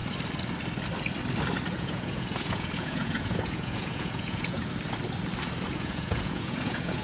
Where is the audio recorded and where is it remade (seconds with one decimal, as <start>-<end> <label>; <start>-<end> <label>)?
0.0-1.7 recorded; 1.7-4.6 remade; 4.6-5.7 recorded; 5.7-7.0 remade